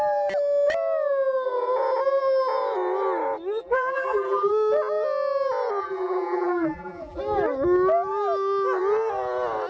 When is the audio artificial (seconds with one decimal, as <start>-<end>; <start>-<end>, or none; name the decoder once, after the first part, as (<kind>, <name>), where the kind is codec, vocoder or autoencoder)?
3.6-4.5 (vocoder, BigVGAN v2); 5.8-7.2